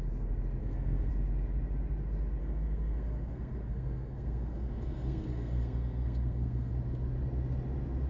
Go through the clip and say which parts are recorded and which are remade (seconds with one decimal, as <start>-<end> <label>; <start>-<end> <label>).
0.0-0.6 recorded; 0.6-1.1 remade; 1.1-2.4 recorded; 2.4-6.7 remade; 6.7-8.1 recorded